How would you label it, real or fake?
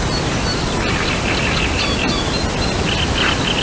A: real